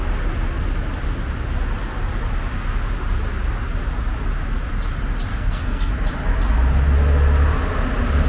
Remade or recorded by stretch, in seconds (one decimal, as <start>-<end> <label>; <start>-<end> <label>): 0.0-5.3 recorded; 5.3-5.9 remade; 5.9-8.3 recorded